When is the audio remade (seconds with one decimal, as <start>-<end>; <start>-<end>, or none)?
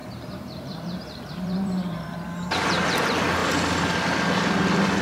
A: 0.0-3.0